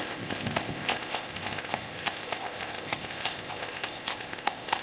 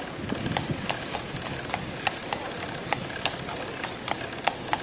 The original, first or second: second